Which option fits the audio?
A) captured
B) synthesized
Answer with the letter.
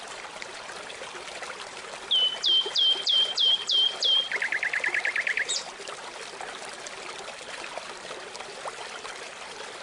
B